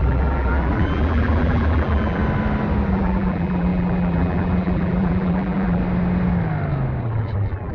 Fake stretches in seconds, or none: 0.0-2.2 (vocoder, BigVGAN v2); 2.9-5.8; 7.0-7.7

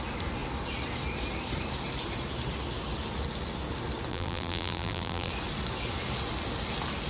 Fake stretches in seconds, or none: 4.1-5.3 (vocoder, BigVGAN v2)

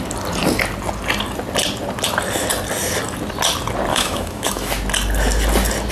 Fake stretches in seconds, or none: 3.9-4.7 (autoencoder, DAC-VAE)